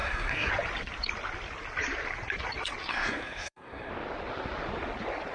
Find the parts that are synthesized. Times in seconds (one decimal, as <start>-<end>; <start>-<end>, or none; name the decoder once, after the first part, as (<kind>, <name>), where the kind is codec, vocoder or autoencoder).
0.0-0.5 (codec, SNAC); 2.9-3.9